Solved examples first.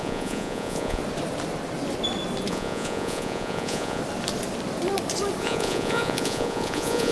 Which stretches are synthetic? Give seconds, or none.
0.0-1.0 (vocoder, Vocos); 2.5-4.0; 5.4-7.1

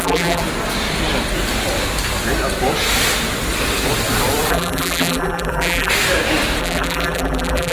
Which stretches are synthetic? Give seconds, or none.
0.0-0.4 (vocoder, BigVGAN v2); 4.5-5.9; 6.6-7.7

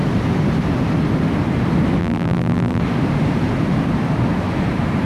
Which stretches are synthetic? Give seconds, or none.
2.0-2.8 (vocoder, BigVGAN v2)